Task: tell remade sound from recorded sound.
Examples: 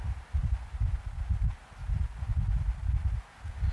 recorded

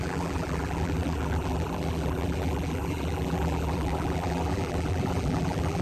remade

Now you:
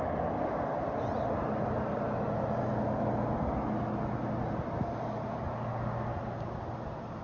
recorded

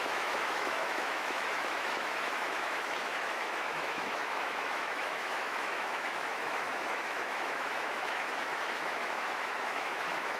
remade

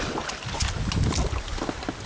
recorded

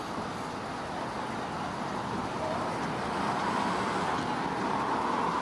recorded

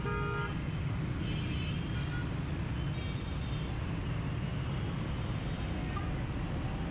recorded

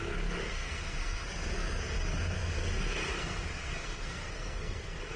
remade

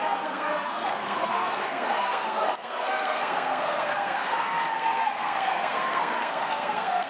remade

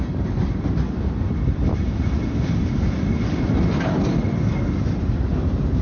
remade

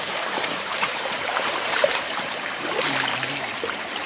remade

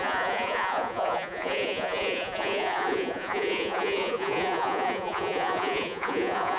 remade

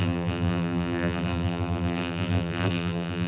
remade